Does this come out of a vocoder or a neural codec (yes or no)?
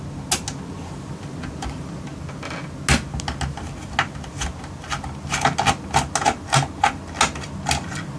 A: no